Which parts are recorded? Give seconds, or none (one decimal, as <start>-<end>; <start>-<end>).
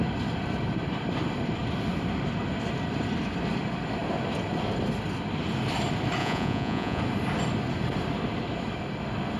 0.0-6.2; 7.0-9.4